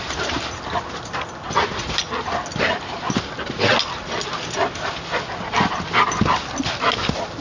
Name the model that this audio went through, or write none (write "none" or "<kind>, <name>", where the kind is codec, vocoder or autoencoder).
none